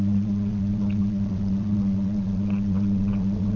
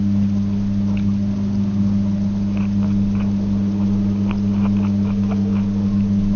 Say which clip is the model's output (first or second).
first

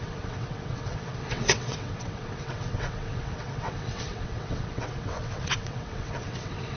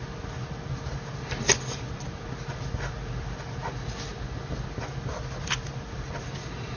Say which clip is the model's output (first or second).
first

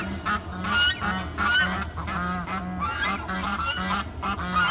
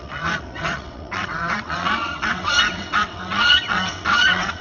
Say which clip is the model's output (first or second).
second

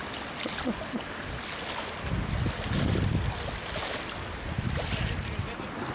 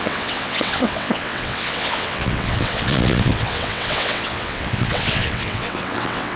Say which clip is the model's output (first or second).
second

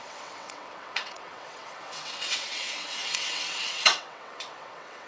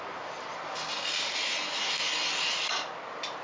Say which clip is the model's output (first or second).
first